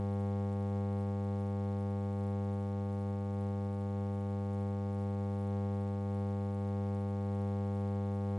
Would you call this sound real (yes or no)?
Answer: yes